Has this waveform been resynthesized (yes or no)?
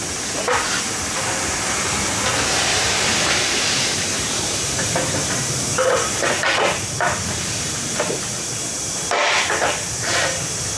yes